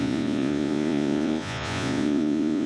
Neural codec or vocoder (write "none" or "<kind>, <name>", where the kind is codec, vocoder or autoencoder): vocoder, Vocos